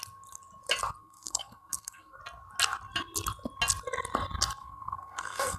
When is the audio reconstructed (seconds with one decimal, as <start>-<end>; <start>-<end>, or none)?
1.0-2.2; 4.6-5.6